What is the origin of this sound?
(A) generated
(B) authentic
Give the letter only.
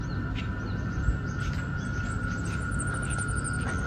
B